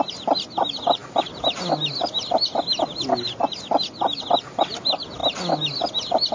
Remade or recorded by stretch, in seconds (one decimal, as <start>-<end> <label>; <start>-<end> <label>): 0.0-6.3 recorded